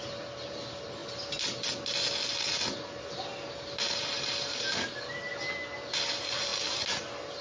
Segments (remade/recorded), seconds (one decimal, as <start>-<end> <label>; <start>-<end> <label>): 0.0-7.4 recorded